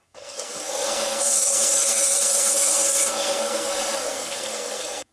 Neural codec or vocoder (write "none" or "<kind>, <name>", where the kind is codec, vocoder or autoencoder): codec, SNAC